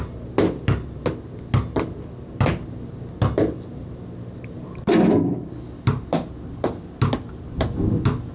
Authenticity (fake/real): real